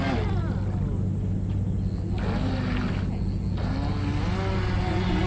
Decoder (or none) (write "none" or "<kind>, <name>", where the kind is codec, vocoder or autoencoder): none